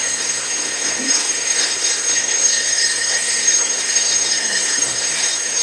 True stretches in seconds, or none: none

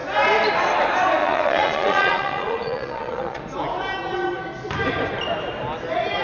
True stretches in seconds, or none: 0.0-1.2; 3.4-6.2

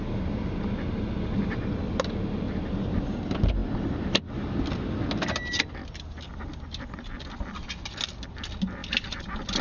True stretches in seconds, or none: 0.0-9.6

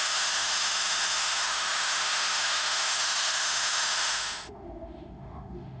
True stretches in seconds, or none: none

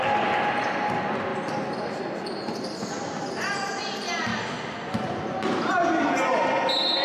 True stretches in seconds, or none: 0.0-7.0

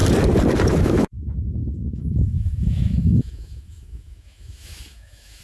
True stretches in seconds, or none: 0.0-0.7

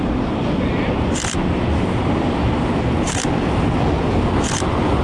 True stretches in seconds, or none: 0.0-5.0